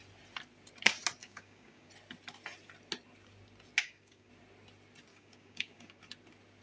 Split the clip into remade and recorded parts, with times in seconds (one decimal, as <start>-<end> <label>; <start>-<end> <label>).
0.0-1.2 recorded; 1.2-1.9 remade; 1.9-3.8 recorded; 3.8-4.3 remade; 4.3-5.1 recorded; 5.1-6.0 remade; 6.0-6.6 recorded